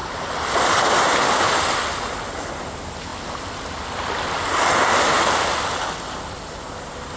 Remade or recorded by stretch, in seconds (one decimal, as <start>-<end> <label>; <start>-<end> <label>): 0.0-7.2 recorded